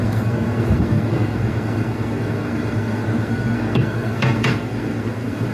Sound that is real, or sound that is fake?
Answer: fake